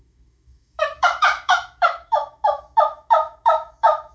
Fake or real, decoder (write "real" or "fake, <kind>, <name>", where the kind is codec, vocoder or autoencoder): fake, autoencoder, DAC-VAE